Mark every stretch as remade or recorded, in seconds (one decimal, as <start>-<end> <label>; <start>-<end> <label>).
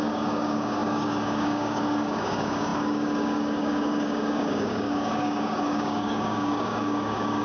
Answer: 0.0-7.4 remade